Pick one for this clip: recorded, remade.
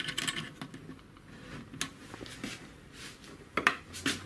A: recorded